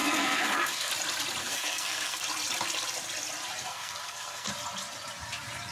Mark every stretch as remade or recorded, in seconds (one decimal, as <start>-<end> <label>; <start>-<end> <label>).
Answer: 0.0-0.9 remade; 0.9-1.4 recorded; 1.4-2.2 remade; 2.2-3.6 recorded; 3.6-4.5 remade; 4.5-5.7 recorded